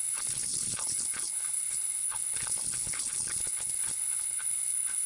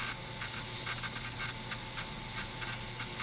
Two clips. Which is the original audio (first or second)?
second